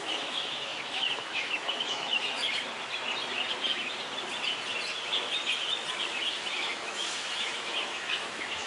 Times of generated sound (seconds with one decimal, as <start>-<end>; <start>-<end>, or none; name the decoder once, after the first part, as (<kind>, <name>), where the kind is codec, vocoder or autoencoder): 0.0-2.4 (autoencoder, DAC-VAE); 6.5-8.7